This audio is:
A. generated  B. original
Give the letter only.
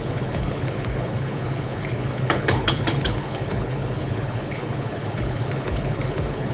A